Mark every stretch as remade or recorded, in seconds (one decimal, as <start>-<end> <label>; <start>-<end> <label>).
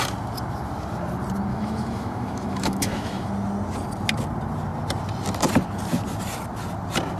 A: 0.0-1.5 recorded; 1.5-3.3 remade; 3.3-7.2 recorded